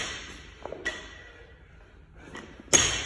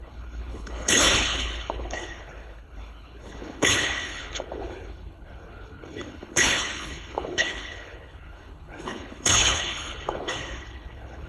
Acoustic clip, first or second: first